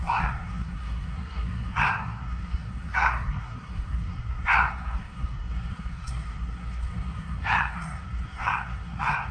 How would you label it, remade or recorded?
remade